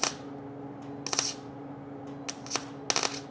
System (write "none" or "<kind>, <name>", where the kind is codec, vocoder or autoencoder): none